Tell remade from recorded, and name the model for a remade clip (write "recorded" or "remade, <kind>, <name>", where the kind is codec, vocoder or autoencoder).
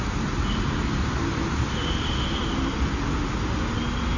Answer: recorded